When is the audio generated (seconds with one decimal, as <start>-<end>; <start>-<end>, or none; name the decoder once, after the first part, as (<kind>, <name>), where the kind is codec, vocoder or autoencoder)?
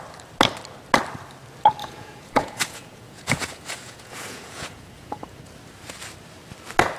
1.8-5.4 (vocoder, Vocos)